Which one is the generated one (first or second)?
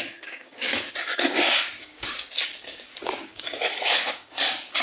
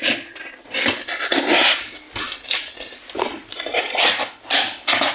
first